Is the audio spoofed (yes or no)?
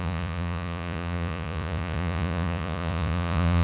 yes